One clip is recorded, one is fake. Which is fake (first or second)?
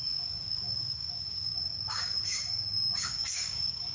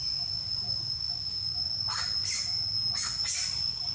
first